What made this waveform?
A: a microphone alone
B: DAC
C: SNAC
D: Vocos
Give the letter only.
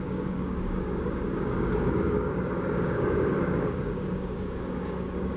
B